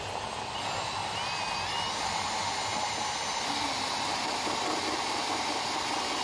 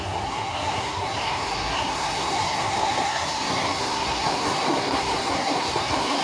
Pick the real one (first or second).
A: first